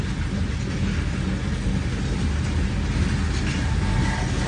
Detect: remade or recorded recorded